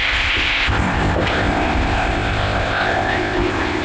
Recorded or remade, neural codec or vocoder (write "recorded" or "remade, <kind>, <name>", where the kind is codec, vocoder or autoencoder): remade, codec, ZipCodec